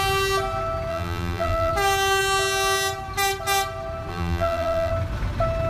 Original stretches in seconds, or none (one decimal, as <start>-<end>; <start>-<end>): 0.0-0.9; 1.7-4.1; 4.9-5.7